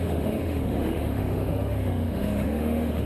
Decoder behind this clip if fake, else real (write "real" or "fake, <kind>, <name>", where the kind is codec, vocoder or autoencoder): fake, autoencoder, DAC-VAE